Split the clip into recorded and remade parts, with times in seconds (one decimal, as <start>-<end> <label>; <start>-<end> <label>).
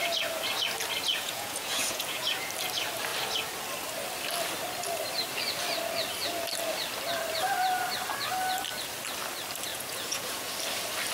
0.0-1.1 recorded; 1.1-2.5 remade; 2.5-9.7 recorded; 9.7-10.5 remade; 10.5-11.1 recorded